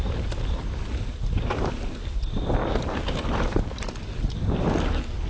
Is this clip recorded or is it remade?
recorded